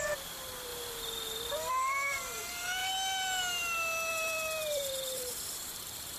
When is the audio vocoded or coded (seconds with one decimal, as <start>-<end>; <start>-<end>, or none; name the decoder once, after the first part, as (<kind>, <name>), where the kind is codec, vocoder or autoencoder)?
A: 0.0-0.7 (vocoder, BigVGAN v2); 1.7-2.8; 4.1-6.2